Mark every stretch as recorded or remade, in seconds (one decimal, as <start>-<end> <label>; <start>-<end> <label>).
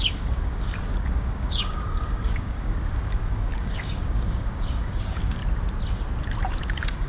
0.0-5.4 remade; 5.4-6.6 recorded; 6.6-7.1 remade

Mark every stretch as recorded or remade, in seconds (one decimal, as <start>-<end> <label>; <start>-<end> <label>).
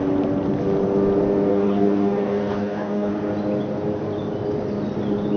0.0-1.5 recorded; 1.5-3.1 remade; 3.1-5.4 recorded